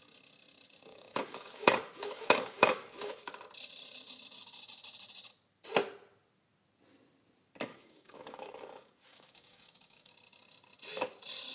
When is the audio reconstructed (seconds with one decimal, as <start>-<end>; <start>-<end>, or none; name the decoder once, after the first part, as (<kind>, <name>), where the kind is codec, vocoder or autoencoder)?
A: 0.9-3.3 (codec, DAC); 7.7-10.1